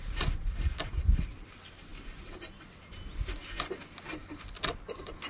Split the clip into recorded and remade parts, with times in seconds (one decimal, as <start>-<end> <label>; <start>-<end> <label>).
0.0-4.2 recorded; 4.2-5.3 remade